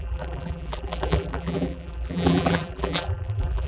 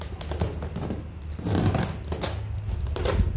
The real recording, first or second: second